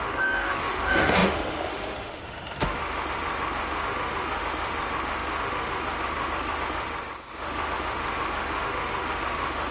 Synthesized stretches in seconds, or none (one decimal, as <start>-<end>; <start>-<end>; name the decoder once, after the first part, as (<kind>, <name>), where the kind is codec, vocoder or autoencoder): 0.0-9.7 (autoencoder, DAC-VAE)